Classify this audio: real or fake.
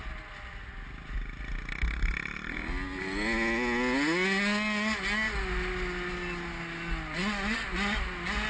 real